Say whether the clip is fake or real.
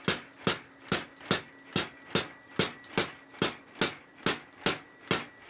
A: real